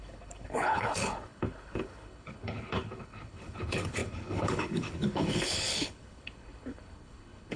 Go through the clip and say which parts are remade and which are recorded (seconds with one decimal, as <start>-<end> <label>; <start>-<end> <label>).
0.0-7.6 remade